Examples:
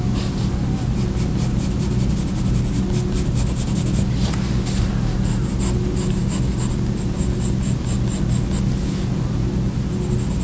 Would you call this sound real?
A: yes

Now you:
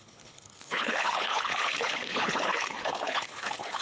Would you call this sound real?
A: no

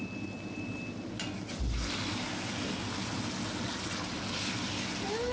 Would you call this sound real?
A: yes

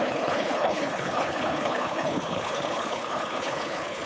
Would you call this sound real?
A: no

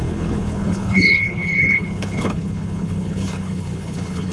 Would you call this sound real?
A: no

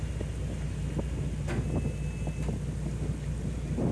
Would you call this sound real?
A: yes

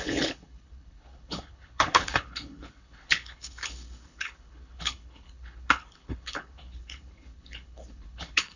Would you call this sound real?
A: no